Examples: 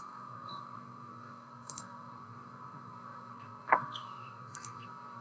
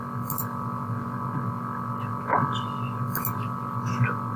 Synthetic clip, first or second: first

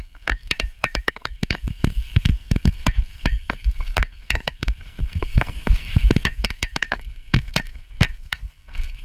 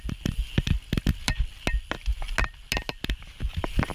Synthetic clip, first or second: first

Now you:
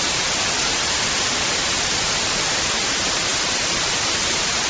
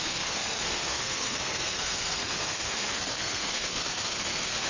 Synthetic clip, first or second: second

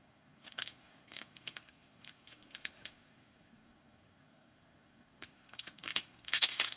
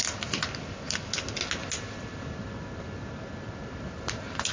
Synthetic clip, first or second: first